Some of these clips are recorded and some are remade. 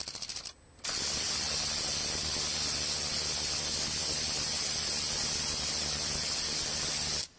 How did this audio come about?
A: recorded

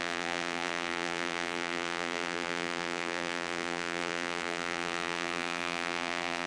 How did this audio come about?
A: remade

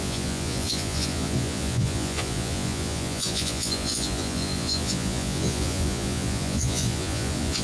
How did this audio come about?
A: remade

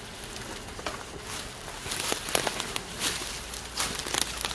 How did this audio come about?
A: recorded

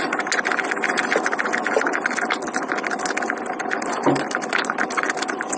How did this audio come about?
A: recorded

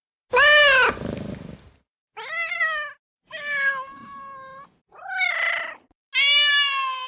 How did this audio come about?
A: recorded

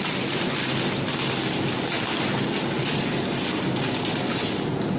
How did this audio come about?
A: recorded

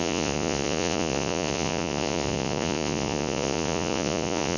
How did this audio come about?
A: remade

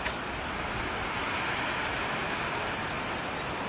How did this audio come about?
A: recorded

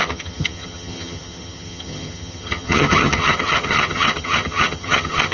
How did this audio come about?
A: remade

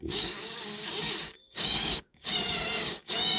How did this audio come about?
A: remade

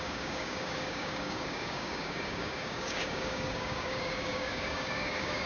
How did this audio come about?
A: remade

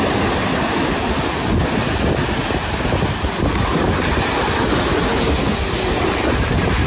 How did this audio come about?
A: recorded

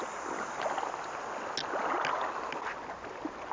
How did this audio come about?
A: recorded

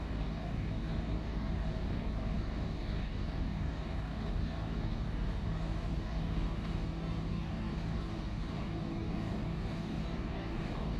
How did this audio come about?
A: remade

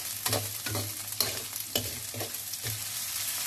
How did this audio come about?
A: recorded